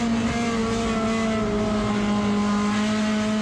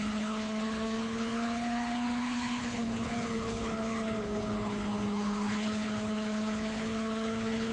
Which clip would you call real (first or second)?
first